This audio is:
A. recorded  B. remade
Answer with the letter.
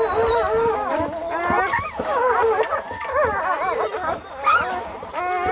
A